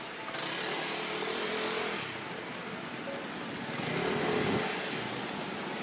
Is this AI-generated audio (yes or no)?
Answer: no